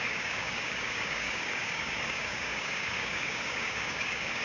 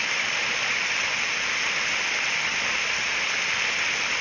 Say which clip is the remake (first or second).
first